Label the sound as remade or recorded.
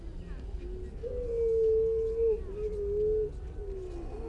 recorded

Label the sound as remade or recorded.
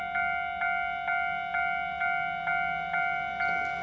recorded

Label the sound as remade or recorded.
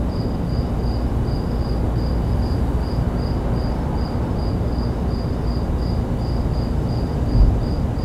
recorded